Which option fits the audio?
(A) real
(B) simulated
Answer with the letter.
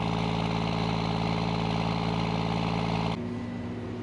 A